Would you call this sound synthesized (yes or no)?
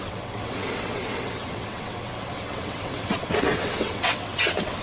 yes